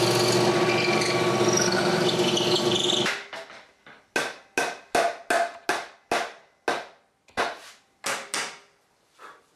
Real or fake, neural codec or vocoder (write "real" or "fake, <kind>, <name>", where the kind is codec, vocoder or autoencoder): real